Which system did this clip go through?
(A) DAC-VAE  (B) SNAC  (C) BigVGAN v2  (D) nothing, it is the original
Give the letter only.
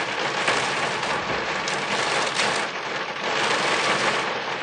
D